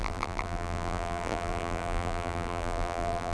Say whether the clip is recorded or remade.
remade